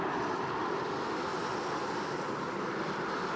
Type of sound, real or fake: real